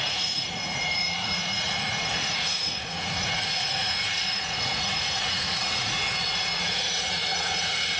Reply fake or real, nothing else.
fake